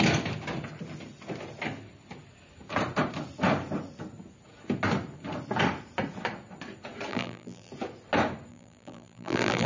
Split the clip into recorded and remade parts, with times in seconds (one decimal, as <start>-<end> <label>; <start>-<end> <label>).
0.0-7.1 recorded; 7.1-7.7 remade; 7.7-8.5 recorded; 8.5-9.7 remade